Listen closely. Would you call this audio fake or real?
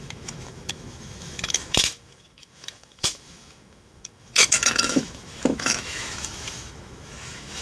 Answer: fake